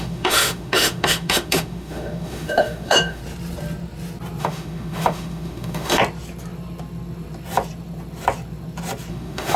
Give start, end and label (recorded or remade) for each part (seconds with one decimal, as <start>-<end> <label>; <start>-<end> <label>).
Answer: 0.0-3.2 remade; 3.2-4.4 recorded; 4.4-6.0 remade; 6.0-9.1 recorded; 9.1-9.6 remade